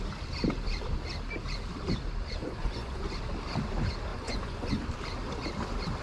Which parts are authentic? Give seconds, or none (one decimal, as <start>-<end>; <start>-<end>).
0.0-2.4; 3.0-4.1; 4.8-6.0

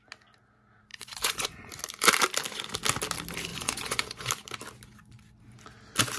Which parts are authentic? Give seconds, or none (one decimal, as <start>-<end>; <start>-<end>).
0.0-0.9; 1.7-3.5; 4.3-6.2

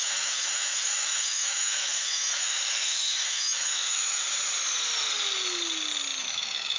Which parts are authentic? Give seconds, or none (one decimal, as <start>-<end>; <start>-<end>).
4.2-6.2

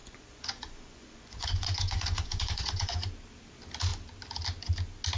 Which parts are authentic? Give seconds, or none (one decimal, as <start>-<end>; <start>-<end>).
3.1-5.2

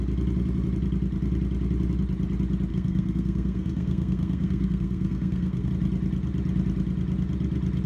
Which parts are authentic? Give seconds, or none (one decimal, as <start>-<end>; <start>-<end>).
0.0-2.7; 5.7-7.9

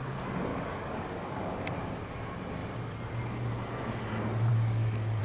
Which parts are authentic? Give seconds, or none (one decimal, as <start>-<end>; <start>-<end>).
0.0-0.5; 1.5-4.5

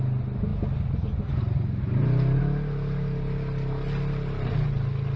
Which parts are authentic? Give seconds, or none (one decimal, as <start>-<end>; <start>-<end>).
0.0-5.2